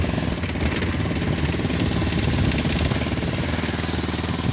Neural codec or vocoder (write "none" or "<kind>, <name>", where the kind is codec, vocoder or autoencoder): none